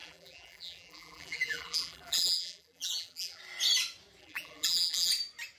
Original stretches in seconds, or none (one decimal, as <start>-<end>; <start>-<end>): 3.4-4.2; 5.1-5.6